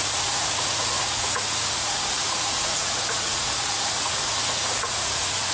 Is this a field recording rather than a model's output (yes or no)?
no